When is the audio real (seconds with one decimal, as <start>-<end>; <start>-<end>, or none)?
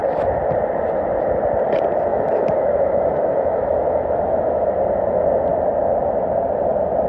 0.0-2.1; 4.7-7.1